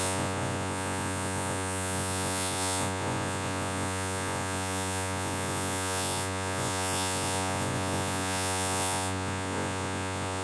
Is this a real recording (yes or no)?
no